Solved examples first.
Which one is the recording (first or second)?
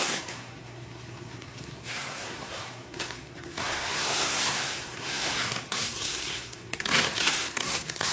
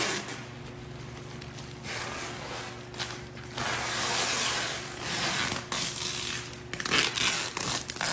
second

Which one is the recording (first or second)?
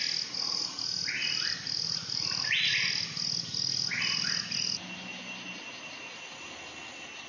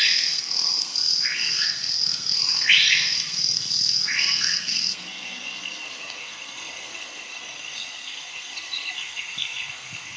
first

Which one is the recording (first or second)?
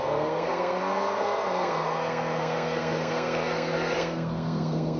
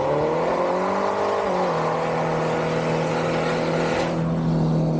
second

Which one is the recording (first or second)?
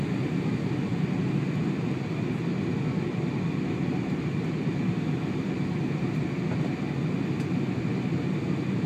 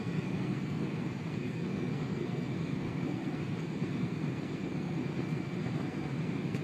first